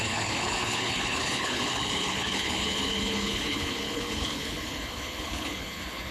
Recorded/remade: remade